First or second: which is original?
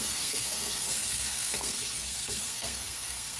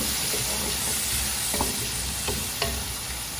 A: second